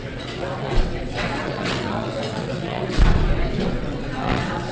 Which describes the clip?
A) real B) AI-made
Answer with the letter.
B